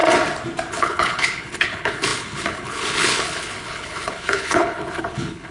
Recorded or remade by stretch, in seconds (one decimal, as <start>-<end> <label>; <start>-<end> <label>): 0.0-0.7 recorded; 0.7-5.5 remade